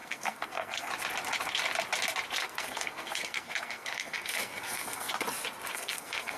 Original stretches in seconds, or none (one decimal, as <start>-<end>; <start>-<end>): 0.9-2.4; 5.1-5.7